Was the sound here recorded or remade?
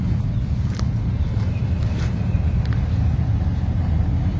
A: recorded